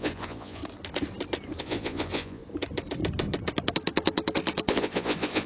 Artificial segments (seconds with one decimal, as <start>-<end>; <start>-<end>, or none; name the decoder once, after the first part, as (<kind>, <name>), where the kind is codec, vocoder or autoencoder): 0.0-0.6 (vocoder, Vocos); 1.6-2.4; 4.7-5.5

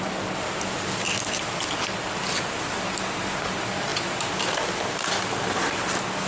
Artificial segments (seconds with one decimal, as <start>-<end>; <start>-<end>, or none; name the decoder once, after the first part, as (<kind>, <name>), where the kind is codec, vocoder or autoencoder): none

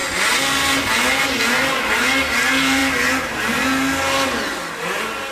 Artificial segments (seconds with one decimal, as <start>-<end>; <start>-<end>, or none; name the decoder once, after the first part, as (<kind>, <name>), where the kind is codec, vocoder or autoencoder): none

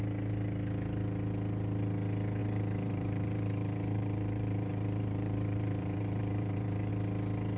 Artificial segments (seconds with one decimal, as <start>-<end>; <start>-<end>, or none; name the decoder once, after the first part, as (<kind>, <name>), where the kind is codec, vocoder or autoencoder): 2.4-6.9 (vocoder, BigVGAN v2)

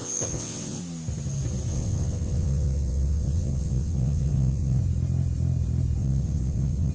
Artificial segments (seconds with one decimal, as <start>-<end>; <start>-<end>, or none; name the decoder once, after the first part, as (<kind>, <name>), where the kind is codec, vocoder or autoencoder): 0.0-0.8 (vocoder, WaveNeXt); 1.7-4.8; 6.0-6.9